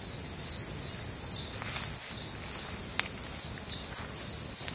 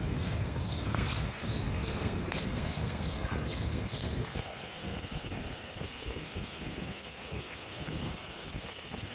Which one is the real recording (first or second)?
first